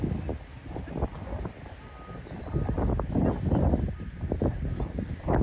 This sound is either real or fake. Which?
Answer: real